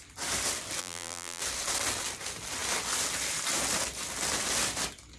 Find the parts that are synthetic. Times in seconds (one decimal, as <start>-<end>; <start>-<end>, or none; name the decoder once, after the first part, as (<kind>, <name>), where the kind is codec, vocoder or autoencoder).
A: 0.8-1.4 (vocoder, BigVGAN v2)